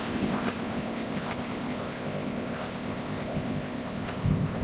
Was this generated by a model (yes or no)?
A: yes